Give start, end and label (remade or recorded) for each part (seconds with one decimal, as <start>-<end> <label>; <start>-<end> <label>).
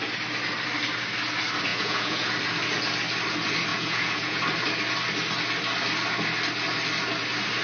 0.0-1.7 recorded; 1.7-2.3 remade; 2.3-3.7 recorded; 3.7-4.4 remade; 4.4-7.6 recorded